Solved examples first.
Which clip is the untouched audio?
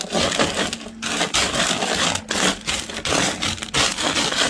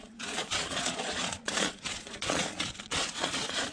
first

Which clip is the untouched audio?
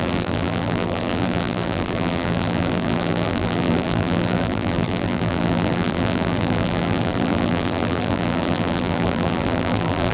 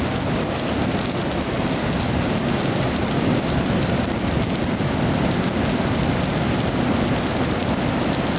second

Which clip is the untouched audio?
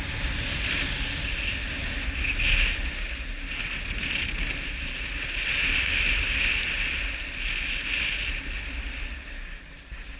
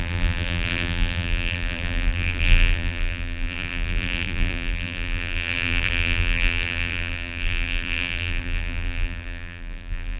first